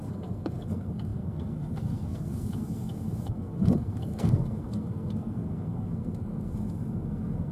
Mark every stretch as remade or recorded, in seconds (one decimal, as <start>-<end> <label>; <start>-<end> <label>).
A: 0.0-7.5 remade